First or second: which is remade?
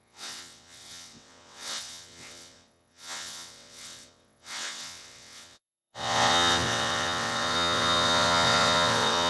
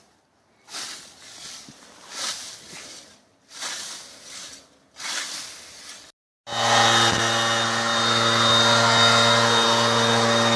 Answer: first